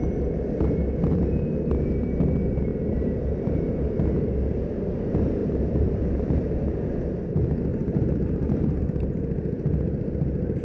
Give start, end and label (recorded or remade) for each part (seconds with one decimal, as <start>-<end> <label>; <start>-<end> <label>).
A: 0.0-2.7 recorded; 2.7-3.7 remade; 3.7-5.4 recorded; 5.4-6.7 remade; 6.7-7.7 recorded; 7.7-8.8 remade; 8.8-10.6 recorded